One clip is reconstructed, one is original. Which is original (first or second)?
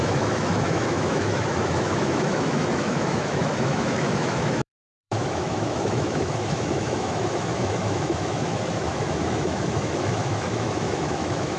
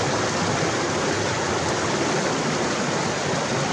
second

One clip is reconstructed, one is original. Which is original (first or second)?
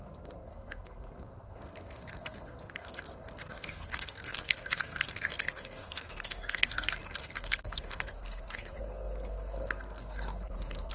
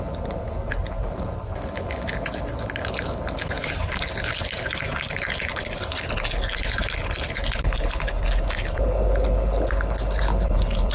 second